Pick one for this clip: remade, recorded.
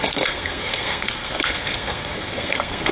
remade